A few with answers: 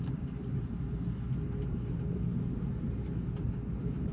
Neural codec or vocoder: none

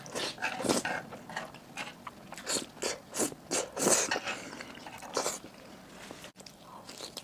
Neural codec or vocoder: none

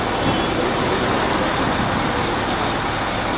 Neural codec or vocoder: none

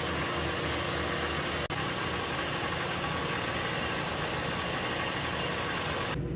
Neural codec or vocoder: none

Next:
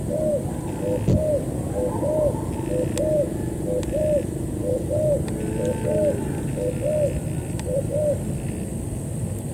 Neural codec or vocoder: none